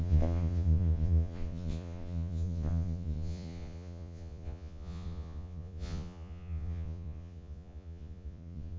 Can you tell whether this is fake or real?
fake